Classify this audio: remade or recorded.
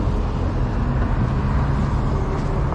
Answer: recorded